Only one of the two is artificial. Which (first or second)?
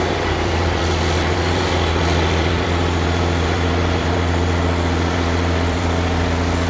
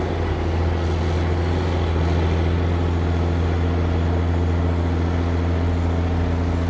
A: first